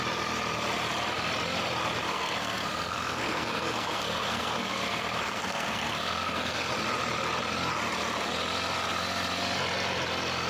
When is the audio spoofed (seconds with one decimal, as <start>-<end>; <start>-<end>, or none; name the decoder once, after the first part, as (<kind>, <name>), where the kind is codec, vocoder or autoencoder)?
2.0-6.7 (codec, SNAC)